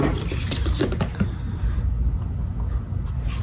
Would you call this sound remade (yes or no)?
no